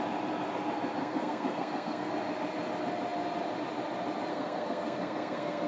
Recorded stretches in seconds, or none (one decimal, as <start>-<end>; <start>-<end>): 0.0-1.0; 2.1-4.3